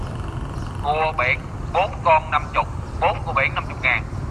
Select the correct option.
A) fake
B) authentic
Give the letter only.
B